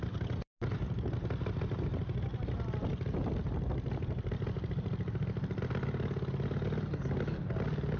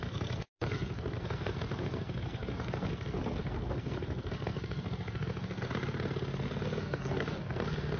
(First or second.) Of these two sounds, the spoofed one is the second